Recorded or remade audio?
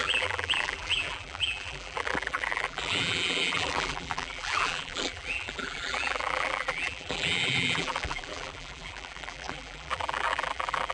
remade